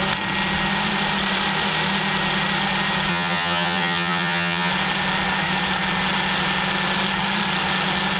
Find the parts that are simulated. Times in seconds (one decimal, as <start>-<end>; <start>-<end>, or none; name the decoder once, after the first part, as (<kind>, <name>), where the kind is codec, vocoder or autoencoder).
3.1-4.7 (vocoder, HiFi-GAN)